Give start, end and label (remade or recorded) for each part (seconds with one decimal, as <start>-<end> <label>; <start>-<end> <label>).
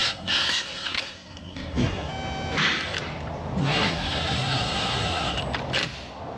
0.0-2.1 remade; 2.1-3.6 recorded; 3.6-5.4 remade; 5.4-6.4 recorded